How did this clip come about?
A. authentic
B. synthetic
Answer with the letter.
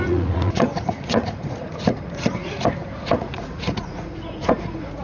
B